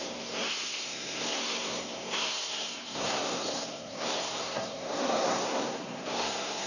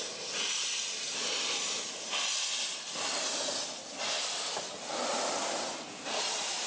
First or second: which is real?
second